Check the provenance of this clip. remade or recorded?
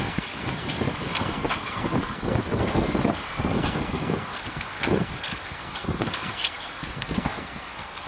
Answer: remade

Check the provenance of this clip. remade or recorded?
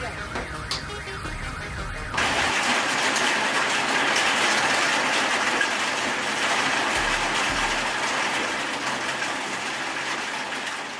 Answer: recorded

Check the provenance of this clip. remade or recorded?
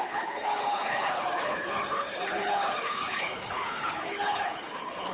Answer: remade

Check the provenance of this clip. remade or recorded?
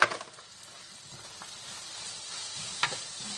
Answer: recorded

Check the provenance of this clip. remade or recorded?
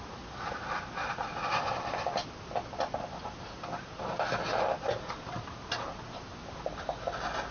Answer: recorded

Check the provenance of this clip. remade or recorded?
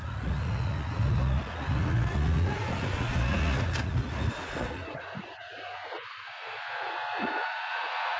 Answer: remade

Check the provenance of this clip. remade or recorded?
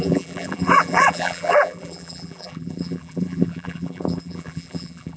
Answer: remade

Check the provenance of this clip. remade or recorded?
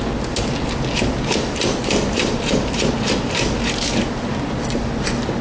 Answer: recorded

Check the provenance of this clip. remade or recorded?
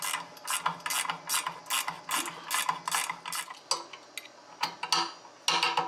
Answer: recorded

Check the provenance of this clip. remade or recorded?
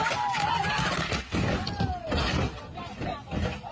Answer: recorded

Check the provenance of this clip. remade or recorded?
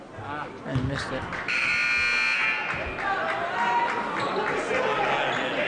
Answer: recorded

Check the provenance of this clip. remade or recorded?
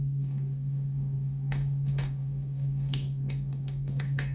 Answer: remade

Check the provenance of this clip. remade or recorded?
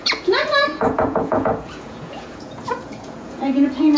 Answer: remade